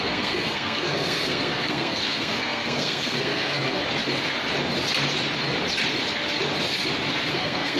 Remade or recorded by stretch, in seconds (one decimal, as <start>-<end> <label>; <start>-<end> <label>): 0.0-3.8 remade; 3.8-7.3 recorded; 7.3-7.8 remade

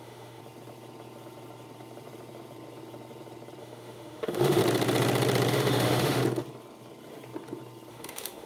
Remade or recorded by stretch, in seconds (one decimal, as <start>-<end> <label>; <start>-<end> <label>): 0.0-0.4 remade; 0.4-3.6 recorded; 3.6-4.6 remade; 4.6-5.5 recorded; 5.5-6.2 remade; 6.2-7.9 recorded; 7.9-8.5 remade

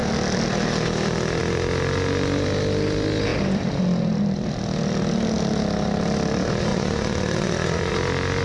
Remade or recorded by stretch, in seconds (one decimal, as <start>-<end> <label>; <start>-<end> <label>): 0.0-6.7 recorded; 6.7-7.9 remade; 7.9-8.4 recorded

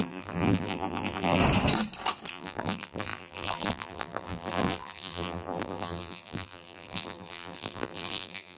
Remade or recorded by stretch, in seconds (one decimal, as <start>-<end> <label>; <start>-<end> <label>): 0.0-1.4 remade; 1.4-2.3 recorded; 2.3-8.6 remade